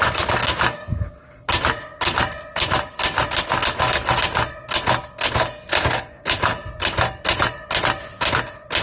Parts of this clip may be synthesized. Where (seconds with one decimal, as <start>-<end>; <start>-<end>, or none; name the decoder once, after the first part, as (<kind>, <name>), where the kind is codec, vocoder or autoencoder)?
0.4-1.1 (codec, DAC)